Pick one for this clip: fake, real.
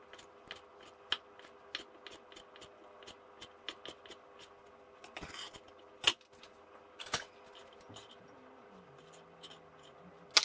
real